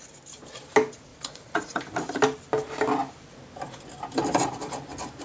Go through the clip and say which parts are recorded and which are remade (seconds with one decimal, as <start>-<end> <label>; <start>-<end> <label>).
0.0-1.1 recorded; 1.1-1.8 remade; 1.8-5.2 recorded